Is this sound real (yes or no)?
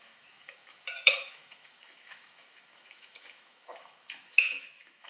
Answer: no